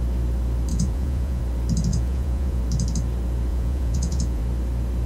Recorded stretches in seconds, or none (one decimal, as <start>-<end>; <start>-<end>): 0.0-0.7; 1.4-1.9; 2.6-3.5; 4.4-5.1